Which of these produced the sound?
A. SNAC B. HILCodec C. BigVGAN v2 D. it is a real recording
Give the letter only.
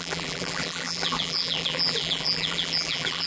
C